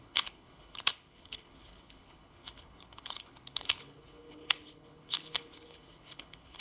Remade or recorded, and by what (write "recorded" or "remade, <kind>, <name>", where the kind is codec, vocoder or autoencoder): remade, codec, HILCodec